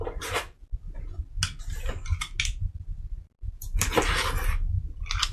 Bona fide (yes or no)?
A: yes